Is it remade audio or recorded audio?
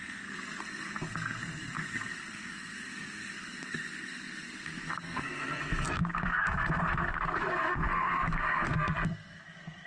remade